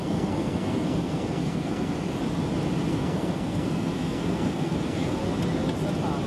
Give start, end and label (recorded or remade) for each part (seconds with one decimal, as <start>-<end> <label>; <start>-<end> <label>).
0.0-2.0 remade; 2.0-2.9 recorded; 2.9-5.2 remade; 5.2-6.3 recorded